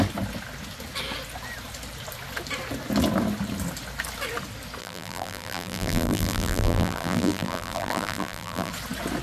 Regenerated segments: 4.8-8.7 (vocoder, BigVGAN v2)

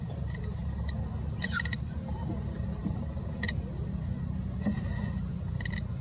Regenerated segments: 0.0-6.0 (vocoder, BigVGAN v2)

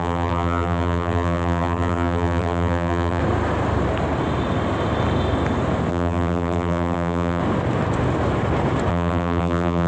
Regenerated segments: 0.0-3.2 (vocoder, BigVGAN v2); 5.9-7.4; 8.9-9.9

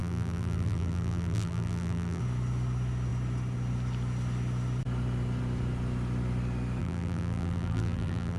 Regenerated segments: 0.0-2.2 (vocoder, BigVGAN v2); 6.8-8.4